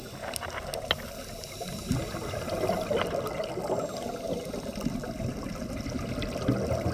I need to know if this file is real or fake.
real